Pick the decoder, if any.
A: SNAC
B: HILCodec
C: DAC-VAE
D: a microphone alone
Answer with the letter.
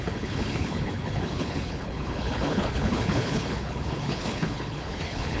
B